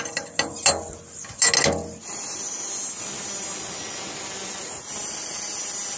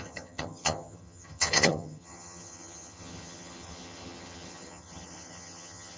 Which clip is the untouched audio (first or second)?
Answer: first